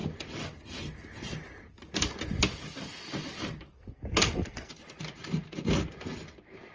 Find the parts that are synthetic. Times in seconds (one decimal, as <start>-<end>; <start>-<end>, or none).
3.7-4.7